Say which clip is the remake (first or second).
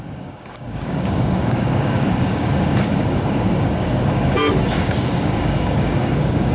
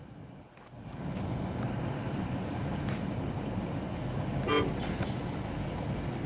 first